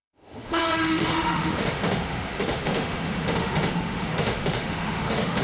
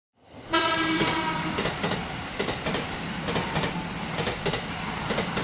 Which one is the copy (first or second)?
first